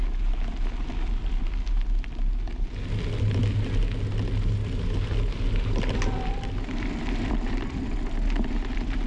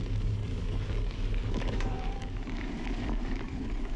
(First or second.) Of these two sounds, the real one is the first